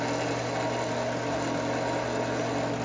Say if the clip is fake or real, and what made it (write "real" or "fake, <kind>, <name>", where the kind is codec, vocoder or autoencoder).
real